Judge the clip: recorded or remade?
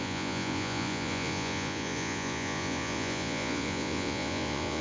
remade